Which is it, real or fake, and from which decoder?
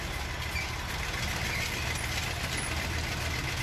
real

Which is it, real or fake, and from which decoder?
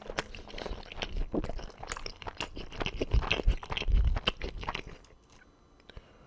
real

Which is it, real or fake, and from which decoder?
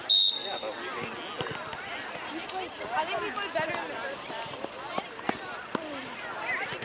real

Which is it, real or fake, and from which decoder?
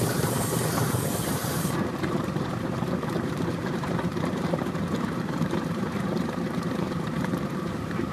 fake, vocoder, BigVGAN v2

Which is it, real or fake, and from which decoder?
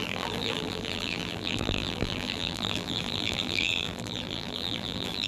fake, vocoder, BigVGAN v2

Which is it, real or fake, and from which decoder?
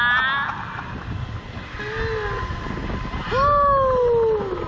real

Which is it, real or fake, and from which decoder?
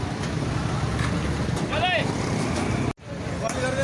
real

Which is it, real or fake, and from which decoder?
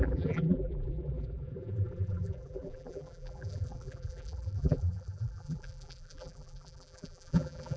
fake, vocoder, BigVGAN v2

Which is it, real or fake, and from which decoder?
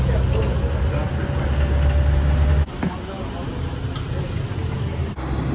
real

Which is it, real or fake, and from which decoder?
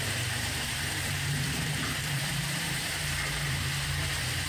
fake, vocoder, BigVGAN v2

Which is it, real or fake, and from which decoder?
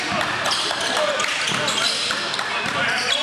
fake, vocoder, BigVGAN v2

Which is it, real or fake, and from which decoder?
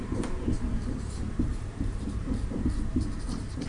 fake, vocoder, BigVGAN v2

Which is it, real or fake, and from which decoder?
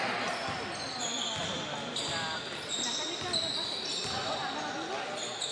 real